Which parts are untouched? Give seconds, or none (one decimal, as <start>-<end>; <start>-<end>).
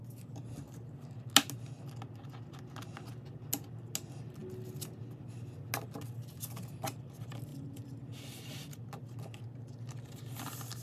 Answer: 0.0-7.5; 8.7-10.8